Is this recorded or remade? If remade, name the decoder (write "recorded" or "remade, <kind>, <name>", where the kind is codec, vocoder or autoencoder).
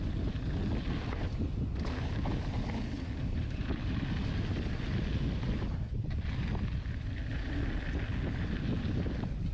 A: recorded